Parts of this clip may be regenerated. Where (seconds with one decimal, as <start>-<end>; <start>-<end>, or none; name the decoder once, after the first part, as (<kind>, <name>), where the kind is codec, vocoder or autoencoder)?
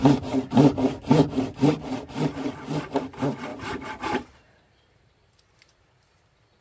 3.5-5.5 (vocoder, BigVGAN v2)